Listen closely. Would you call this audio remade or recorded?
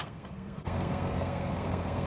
remade